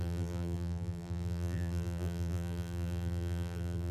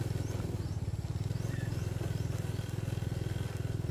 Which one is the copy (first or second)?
first